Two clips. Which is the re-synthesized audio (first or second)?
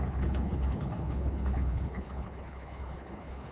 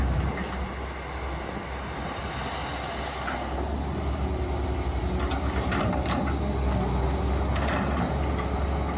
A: first